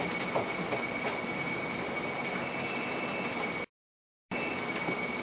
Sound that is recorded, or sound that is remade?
recorded